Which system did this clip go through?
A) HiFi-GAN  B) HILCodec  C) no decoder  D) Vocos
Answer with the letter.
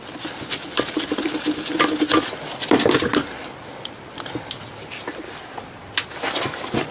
C